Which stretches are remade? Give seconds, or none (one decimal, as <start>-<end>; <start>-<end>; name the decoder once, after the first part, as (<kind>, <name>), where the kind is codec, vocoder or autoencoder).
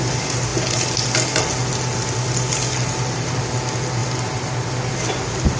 none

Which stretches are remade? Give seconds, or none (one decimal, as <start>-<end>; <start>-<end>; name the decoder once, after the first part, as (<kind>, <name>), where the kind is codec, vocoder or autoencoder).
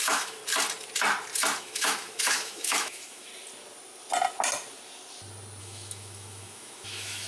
0.0-0.4 (autoencoder, DAC-VAE); 1.6-3.3; 5.6-7.3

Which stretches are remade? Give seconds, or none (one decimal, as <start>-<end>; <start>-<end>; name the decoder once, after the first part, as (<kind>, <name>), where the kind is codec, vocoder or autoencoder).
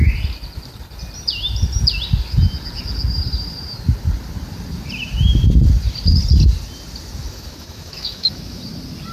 7.2-8.6 (autoencoder, DAC-VAE)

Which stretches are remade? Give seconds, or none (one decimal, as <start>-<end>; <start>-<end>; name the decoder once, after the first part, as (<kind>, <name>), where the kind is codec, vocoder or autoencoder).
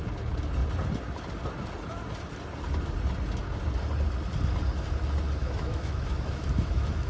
5.4-7.1 (autoencoder, DAC-VAE)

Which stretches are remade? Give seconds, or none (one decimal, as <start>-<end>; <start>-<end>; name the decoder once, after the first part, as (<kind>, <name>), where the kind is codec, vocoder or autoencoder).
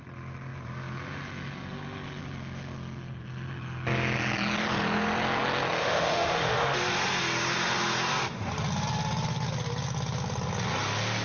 5.8-6.8 (autoencoder, DAC-VAE)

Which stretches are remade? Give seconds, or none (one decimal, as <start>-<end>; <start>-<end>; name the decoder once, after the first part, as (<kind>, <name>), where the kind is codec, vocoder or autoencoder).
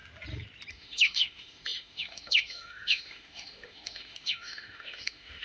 0.7-5.4 (autoencoder, DAC-VAE)